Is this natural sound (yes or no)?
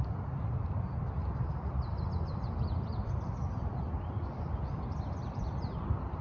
no